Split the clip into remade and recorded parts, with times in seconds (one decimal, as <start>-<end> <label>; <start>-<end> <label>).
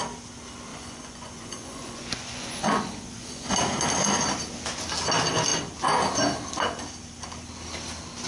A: 0.0-0.7 recorded; 0.7-3.5 remade; 3.5-8.3 recorded